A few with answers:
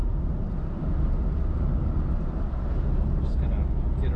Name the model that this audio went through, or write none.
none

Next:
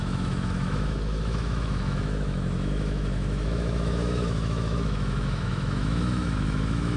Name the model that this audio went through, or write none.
autoencoder, DAC-VAE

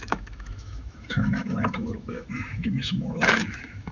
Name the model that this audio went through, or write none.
autoencoder, DAC-VAE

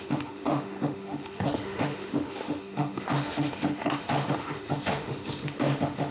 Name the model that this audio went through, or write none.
autoencoder, DAC-VAE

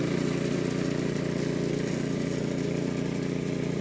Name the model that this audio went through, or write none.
none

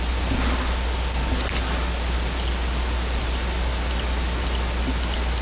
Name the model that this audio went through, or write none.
none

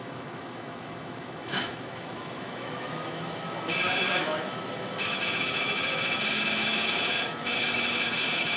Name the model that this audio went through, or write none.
autoencoder, DAC-VAE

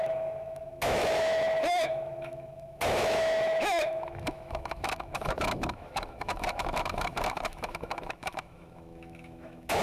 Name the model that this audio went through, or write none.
autoencoder, DAC-VAE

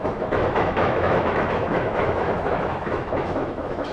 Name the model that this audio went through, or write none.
autoencoder, DAC-VAE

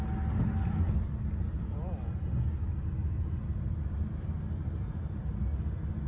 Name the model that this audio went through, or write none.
none